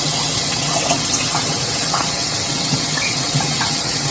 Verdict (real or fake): fake